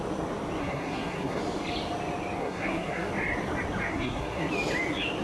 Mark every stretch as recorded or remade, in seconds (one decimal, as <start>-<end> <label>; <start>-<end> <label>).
0.0-0.6 recorded; 0.6-1.4 remade; 1.4-2.4 recorded; 2.4-3.1 remade; 3.1-3.9 recorded; 3.9-4.5 remade; 4.5-5.2 recorded